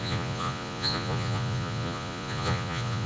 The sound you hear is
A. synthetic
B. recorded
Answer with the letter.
A